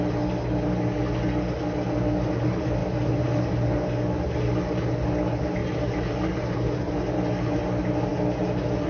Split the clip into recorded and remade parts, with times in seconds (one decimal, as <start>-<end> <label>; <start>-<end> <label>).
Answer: 0.0-8.9 recorded